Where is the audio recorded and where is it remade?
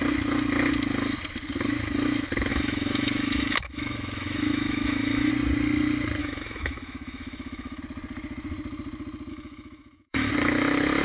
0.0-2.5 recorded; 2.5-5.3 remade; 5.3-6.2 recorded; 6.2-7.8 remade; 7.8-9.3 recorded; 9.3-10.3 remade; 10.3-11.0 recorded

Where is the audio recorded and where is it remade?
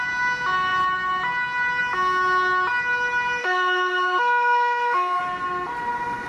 0.0-3.4 recorded; 3.4-5.2 remade; 5.2-6.3 recorded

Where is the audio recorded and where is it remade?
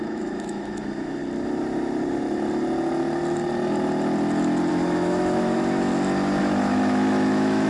0.0-1.2 remade; 1.2-4.7 recorded; 4.7-5.9 remade; 5.9-6.4 recorded; 6.4-7.7 remade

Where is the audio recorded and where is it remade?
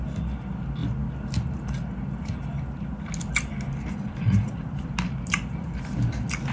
0.0-6.5 recorded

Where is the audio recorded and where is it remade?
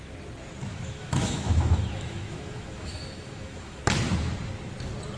0.0-0.7 recorded; 0.7-3.8 remade; 3.8-5.2 recorded